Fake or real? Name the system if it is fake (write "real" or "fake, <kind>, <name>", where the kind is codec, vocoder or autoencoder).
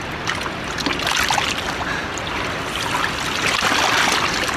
real